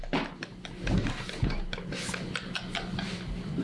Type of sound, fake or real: real